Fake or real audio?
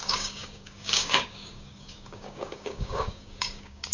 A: fake